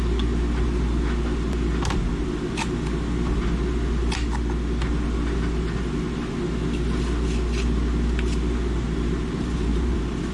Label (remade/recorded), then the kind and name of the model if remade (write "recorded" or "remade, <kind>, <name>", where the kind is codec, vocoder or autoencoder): recorded